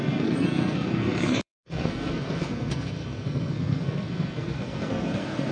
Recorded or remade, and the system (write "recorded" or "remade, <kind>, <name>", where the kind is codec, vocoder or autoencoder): remade, codec, SNAC